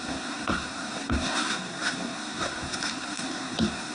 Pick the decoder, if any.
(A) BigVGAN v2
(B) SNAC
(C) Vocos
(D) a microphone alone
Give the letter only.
B